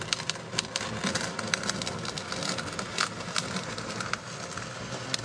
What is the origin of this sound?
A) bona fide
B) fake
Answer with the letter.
A